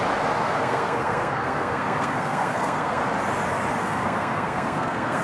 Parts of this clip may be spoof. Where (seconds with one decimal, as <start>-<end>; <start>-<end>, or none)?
0.4-3.0; 3.8-5.2